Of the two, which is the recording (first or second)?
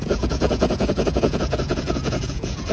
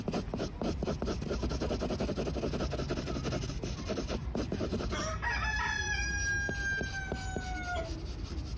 second